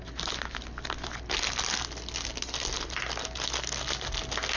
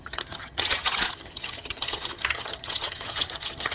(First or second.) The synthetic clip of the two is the second